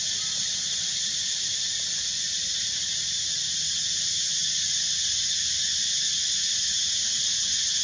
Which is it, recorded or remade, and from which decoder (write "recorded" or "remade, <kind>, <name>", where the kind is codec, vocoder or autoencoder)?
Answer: recorded